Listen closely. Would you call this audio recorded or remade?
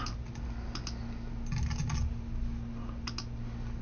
recorded